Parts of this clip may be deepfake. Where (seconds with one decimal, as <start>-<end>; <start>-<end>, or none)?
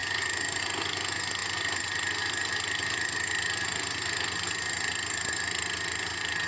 none